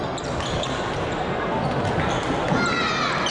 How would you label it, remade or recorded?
recorded